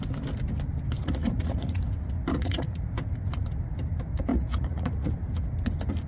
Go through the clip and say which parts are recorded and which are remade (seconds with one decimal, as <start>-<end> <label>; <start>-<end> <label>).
0.0-1.0 recorded; 1.0-1.8 remade; 1.8-2.3 recorded; 2.3-2.9 remade; 2.9-4.3 recorded; 4.3-5.1 remade; 5.1-6.1 recorded